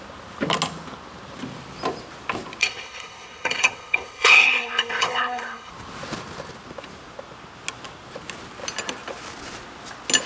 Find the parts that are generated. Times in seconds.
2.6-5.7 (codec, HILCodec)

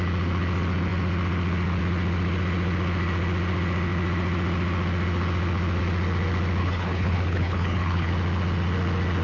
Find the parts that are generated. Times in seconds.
6.6-8.1 (codec, HILCodec)

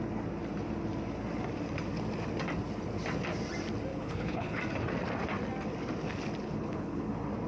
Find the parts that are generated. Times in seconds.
3.9-4.6 (codec, HILCodec); 6.4-7.1

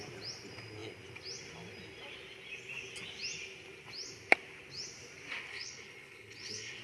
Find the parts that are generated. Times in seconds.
5.5-6.8 (codec, HILCodec)

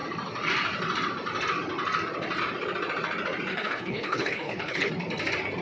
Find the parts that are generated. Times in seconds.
3.5-4.9 (codec, HILCodec)

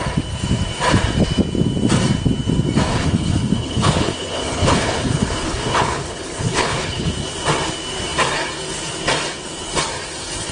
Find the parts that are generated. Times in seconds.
2.9-7.1 (codec, HILCodec)

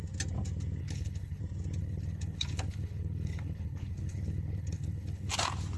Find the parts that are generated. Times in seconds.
0.8-1.4 (codec, HILCodec); 1.8-5.3

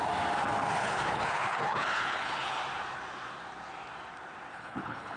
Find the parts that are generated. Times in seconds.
0.8-2.6 (codec, HILCodec); 4.5-5.2